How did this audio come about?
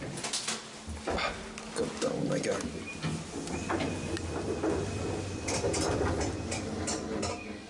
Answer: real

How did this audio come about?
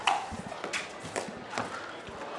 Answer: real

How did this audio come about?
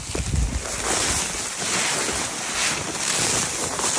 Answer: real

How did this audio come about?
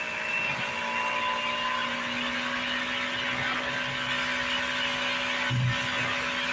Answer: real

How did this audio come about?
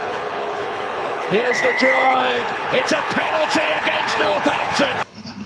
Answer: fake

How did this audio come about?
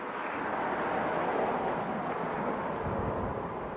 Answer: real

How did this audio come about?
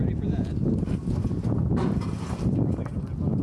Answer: real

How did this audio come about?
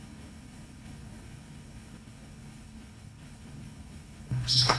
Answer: fake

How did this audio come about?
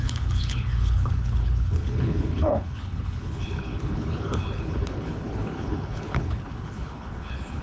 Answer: fake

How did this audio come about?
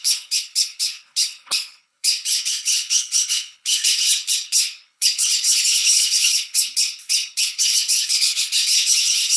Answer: fake